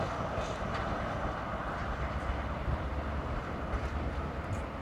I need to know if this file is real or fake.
fake